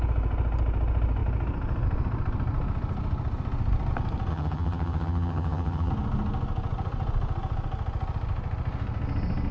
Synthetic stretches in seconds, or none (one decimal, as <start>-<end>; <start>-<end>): 4.3-5.9